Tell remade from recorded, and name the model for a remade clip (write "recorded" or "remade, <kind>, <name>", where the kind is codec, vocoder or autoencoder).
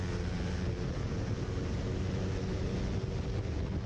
recorded